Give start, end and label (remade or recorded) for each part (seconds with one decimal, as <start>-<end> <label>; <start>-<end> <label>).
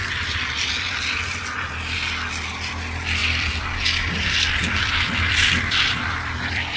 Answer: 0.0-2.5 recorded; 2.5-6.8 remade